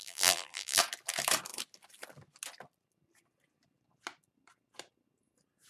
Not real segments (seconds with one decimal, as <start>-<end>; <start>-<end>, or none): 0.0-0.8